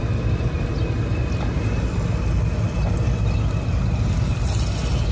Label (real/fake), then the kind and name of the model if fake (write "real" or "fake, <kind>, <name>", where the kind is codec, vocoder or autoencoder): real